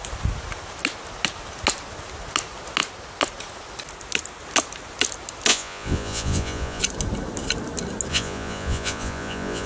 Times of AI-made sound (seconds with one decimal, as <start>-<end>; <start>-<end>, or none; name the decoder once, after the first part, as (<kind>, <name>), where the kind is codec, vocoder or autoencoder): 5.5-6.8 (vocoder, Vocos); 8.1-9.7